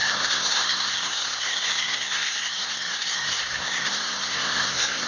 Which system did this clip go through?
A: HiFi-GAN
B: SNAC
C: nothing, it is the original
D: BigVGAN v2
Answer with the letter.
B